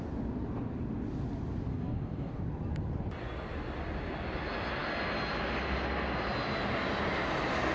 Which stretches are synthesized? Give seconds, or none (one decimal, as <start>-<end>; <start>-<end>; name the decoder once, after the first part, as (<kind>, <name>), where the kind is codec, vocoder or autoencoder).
1.7-2.4 (codec, DAC)